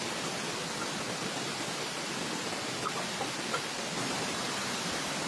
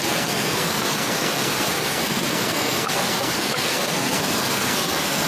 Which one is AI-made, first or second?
second